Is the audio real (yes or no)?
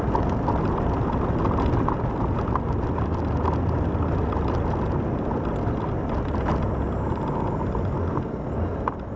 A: yes